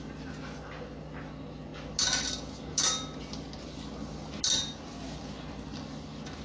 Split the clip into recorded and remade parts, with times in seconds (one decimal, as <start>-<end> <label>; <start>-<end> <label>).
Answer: 0.0-6.4 recorded